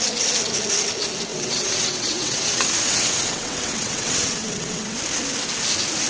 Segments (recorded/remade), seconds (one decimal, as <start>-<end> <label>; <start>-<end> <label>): 0.0-1.3 recorded; 1.3-5.0 remade; 5.0-6.1 recorded